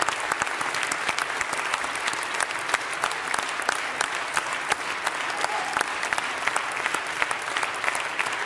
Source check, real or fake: real